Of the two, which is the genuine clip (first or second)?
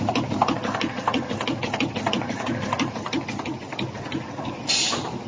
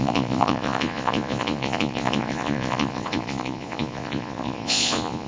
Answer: first